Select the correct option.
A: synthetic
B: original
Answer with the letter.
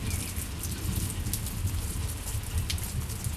A